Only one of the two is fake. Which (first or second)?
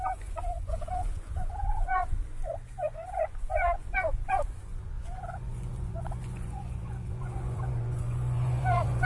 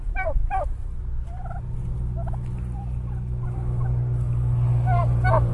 first